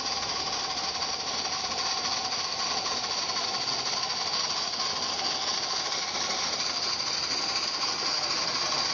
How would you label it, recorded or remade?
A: recorded